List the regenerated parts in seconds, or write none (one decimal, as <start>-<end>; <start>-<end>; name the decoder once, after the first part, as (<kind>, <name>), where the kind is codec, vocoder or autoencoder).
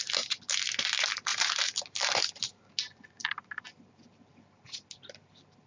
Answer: 1.3-2.6 (vocoder, BigVGAN v2)